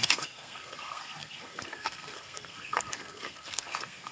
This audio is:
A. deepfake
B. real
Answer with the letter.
A